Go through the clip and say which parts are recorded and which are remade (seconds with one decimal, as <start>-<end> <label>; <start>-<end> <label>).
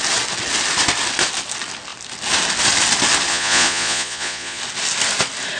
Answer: 0.0-3.3 recorded; 3.3-4.6 remade; 4.6-5.6 recorded